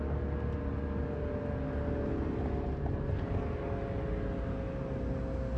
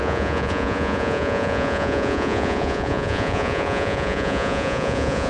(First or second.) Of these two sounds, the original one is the first